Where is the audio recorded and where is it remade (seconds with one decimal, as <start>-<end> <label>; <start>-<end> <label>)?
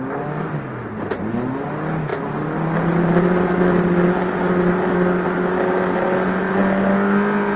0.0-7.6 recorded